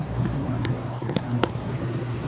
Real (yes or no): no